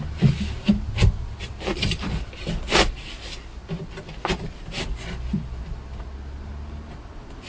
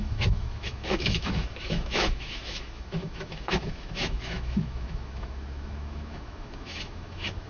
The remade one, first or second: second